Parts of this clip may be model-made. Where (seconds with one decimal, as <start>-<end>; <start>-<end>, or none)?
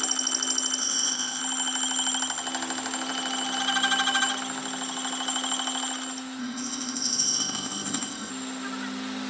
0.8-1.4; 6.4-8.3